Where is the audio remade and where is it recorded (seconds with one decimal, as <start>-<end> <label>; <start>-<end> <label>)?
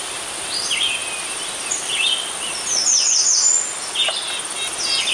0.0-5.1 recorded